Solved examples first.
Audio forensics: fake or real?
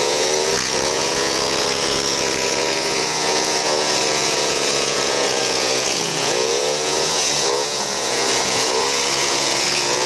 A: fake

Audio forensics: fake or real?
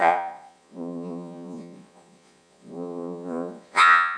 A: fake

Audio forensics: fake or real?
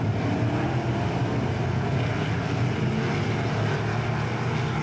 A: real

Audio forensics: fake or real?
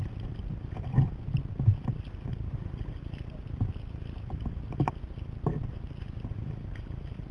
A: real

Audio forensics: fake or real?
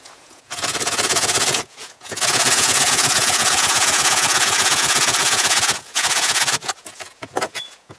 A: fake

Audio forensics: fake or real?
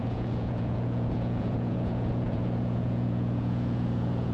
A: fake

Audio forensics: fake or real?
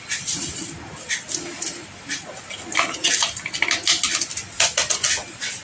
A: real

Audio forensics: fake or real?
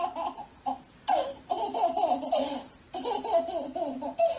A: real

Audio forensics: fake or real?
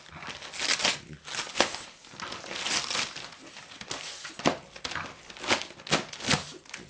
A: real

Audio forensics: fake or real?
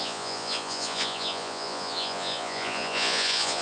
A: fake